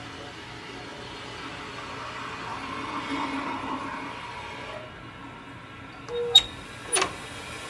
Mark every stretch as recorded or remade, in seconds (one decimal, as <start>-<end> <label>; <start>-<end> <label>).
0.0-2.5 recorded; 2.5-4.8 remade; 4.8-7.7 recorded